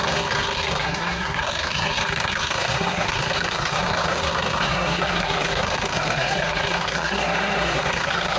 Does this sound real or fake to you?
fake